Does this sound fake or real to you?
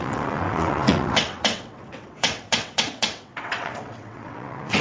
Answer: fake